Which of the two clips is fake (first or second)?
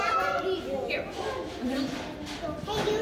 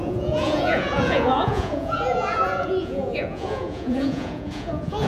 second